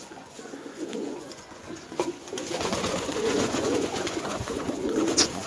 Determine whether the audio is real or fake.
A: fake